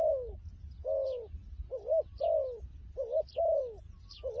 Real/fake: real